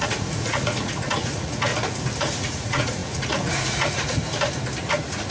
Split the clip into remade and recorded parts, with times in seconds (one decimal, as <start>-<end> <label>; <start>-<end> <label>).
0.0-1.7 remade; 1.7-2.2 recorded; 2.2-4.2 remade; 4.2-4.8 recorded; 4.8-5.3 remade